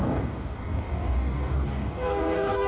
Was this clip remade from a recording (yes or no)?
yes